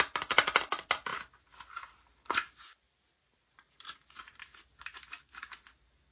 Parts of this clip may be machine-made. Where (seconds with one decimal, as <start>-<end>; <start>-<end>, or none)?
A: 1.1-4.6